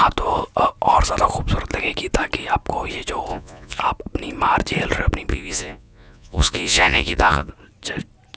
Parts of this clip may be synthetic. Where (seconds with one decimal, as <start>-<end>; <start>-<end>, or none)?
3.3-3.8; 5.3-7.5